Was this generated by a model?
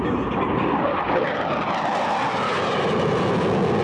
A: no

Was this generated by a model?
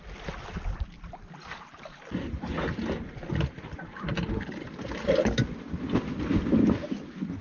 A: no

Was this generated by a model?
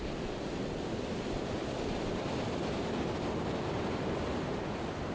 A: no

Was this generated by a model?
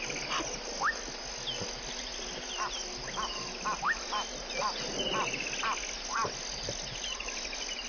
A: no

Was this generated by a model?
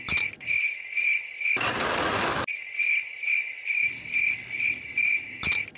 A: no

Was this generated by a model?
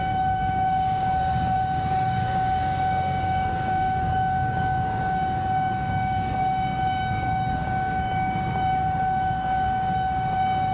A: yes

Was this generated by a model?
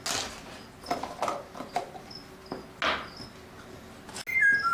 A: no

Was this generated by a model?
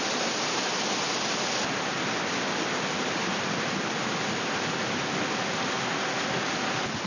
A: no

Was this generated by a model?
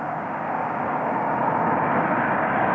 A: yes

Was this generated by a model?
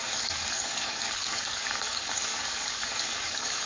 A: yes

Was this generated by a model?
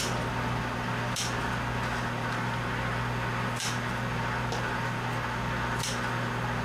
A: no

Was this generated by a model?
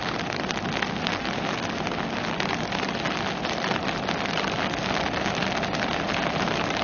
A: no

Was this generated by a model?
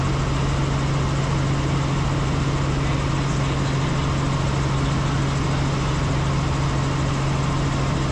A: no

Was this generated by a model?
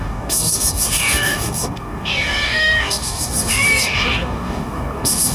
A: yes